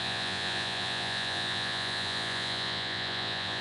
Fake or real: fake